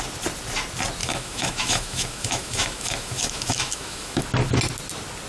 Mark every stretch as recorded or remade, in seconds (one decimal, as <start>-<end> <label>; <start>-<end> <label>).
0.0-1.0 recorded; 1.0-4.2 remade; 4.2-5.3 recorded